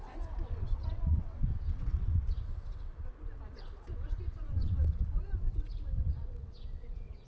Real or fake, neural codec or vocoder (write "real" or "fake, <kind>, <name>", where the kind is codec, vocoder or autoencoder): fake, vocoder, WaveNeXt